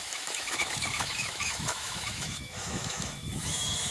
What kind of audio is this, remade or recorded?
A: remade